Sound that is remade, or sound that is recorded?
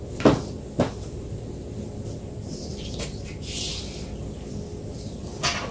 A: recorded